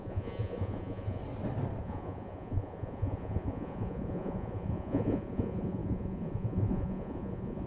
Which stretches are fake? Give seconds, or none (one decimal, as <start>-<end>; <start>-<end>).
0.0-1.2; 1.8-7.7